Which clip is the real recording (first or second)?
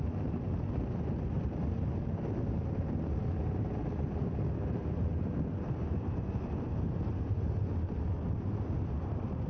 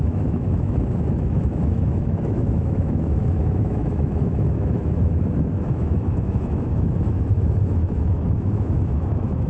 first